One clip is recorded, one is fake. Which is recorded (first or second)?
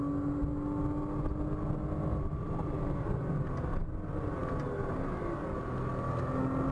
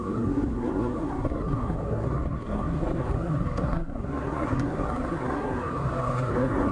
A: first